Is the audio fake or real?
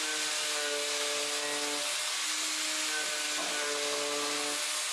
real